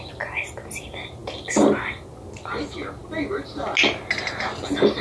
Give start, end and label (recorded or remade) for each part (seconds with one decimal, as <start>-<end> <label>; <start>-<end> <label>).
0.0-5.0 recorded